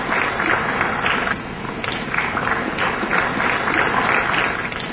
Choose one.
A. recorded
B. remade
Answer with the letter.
A